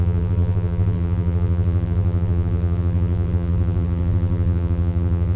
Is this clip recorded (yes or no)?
no